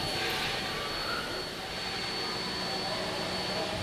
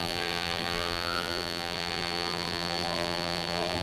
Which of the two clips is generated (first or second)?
second